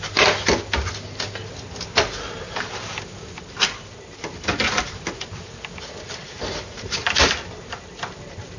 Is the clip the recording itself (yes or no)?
yes